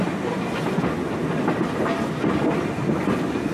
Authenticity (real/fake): real